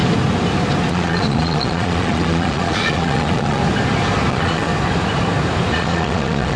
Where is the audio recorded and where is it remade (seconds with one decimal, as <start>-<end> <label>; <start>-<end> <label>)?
0.0-0.9 recorded; 0.9-3.6 remade; 3.6-4.3 recorded; 4.3-4.7 remade; 4.7-5.7 recorded; 5.7-6.6 remade